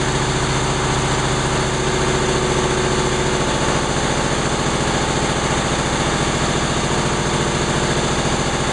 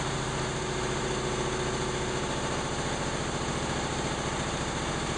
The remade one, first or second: second